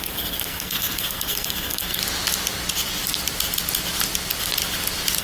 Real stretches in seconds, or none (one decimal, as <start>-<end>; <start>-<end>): 2.0-5.2